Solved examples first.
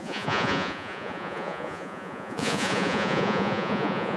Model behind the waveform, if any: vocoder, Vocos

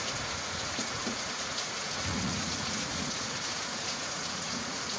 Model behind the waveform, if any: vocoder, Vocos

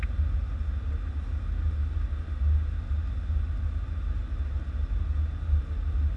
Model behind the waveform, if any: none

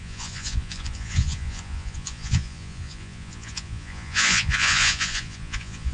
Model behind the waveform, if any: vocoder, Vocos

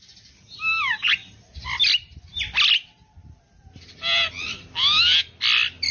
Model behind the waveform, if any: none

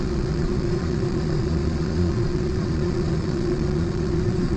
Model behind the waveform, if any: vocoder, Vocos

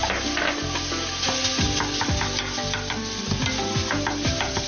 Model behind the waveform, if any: none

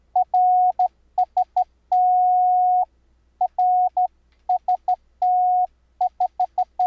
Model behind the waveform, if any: none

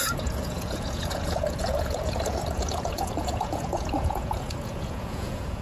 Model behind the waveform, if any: vocoder, Vocos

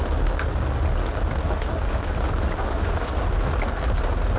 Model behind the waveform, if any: none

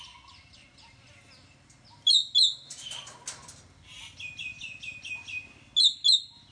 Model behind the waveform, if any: none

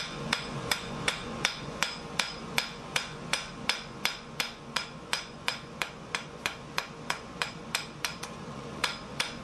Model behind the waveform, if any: vocoder, Vocos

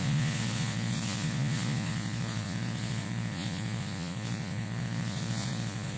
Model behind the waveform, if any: vocoder, Vocos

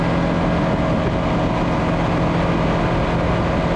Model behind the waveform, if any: none